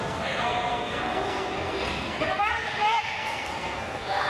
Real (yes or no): no